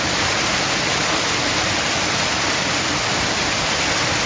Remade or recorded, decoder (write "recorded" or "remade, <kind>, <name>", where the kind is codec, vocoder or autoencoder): recorded